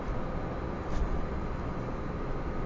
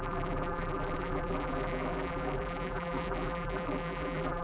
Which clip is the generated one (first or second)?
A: second